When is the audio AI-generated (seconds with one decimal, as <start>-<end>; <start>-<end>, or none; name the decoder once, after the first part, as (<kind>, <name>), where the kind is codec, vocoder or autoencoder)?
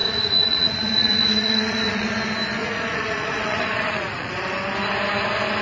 0.0-2.2 (vocoder, Vocos); 2.6-4.3